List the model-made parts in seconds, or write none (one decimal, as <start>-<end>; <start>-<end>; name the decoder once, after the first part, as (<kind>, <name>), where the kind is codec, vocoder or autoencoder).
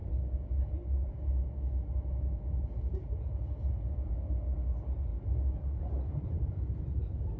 none